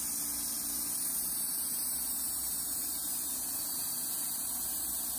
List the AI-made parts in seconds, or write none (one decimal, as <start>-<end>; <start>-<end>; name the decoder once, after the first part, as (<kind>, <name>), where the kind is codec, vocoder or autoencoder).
1.3-3.8 (vocoder, BigVGAN v2)